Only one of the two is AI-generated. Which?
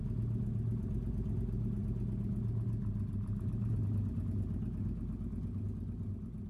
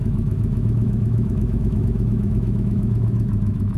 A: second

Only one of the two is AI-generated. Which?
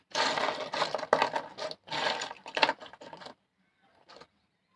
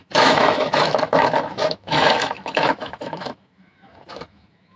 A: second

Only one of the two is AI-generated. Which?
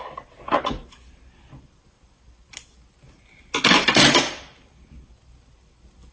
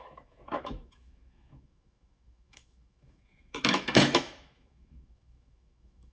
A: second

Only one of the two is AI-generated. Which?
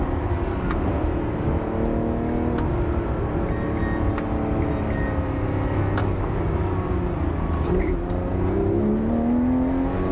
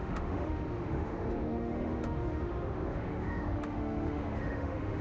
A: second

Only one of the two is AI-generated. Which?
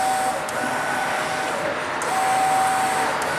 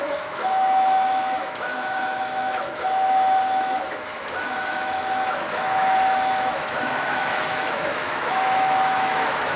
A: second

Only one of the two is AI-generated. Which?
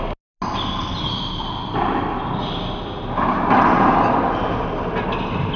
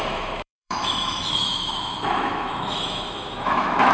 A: second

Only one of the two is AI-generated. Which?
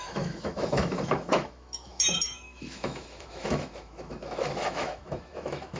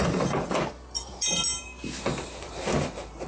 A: first